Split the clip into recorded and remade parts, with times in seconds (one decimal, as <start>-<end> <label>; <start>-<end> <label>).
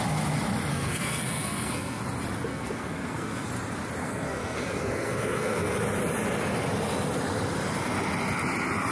0.0-0.7 recorded; 0.7-2.0 remade; 2.0-2.5 recorded; 2.5-3.5 remade; 3.5-4.0 recorded; 4.0-5.7 remade; 5.7-8.9 recorded